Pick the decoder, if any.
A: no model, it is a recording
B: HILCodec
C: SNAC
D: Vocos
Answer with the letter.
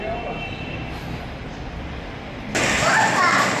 A